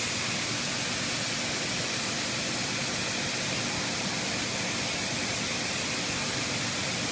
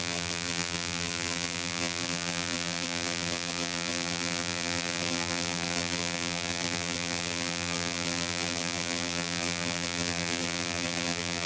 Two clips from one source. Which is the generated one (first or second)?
second